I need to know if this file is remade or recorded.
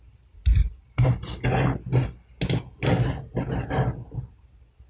recorded